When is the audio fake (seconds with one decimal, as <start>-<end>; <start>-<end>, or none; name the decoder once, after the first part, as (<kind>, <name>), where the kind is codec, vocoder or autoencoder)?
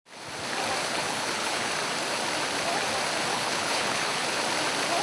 0.8-1.7 (codec, HILCodec); 3.3-4.4